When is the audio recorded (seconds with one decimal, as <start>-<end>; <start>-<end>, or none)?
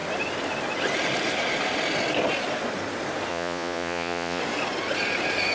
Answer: 0.0-3.3; 4.4-5.5